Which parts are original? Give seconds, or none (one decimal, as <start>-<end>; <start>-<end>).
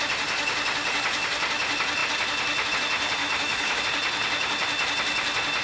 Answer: 0.0-3.2; 3.8-5.6